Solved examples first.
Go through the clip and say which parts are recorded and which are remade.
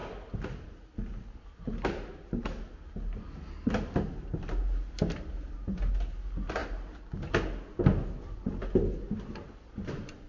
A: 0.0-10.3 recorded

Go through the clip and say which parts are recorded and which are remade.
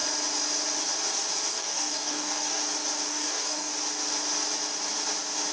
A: 0.0-1.5 recorded; 1.5-2.6 remade; 2.6-3.1 recorded; 3.1-3.7 remade; 3.7-5.5 recorded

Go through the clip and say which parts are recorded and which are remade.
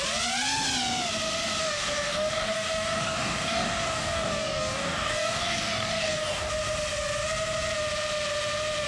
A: 0.0-1.6 recorded; 1.6-6.5 remade; 6.5-8.9 recorded